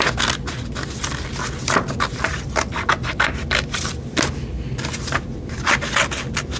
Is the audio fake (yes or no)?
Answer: no